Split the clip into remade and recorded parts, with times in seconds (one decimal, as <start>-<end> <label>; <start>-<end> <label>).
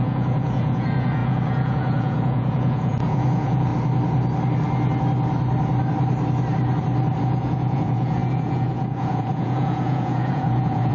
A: 0.0-3.7 remade; 3.7-7.2 recorded; 7.2-10.9 remade